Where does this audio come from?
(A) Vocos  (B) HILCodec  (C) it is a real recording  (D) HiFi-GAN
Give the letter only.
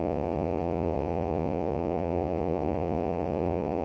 A